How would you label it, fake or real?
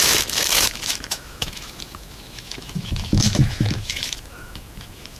fake